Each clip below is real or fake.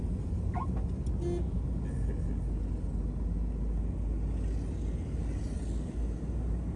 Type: real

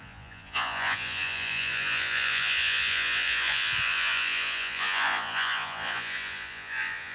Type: fake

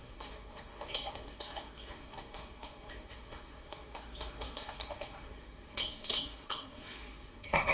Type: fake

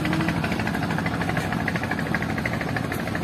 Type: real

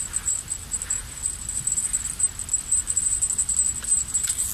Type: real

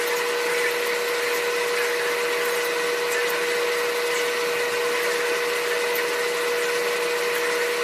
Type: real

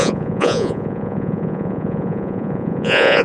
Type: fake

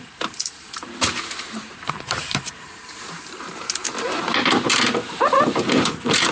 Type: fake